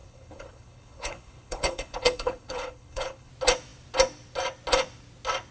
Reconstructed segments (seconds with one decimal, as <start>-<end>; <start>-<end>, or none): 0.0-3.3